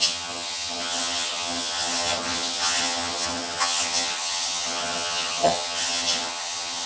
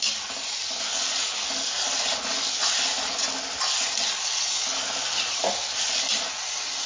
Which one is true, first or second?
second